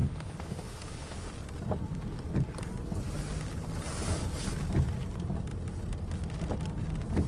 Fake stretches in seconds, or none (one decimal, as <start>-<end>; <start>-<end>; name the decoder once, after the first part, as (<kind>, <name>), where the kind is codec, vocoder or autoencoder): 0.0-1.3 (autoencoder, DAC-VAE)